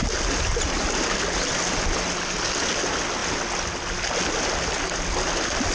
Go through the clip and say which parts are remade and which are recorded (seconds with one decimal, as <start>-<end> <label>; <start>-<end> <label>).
0.0-5.7 recorded